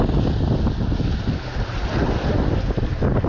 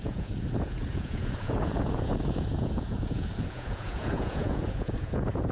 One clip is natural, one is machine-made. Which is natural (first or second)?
first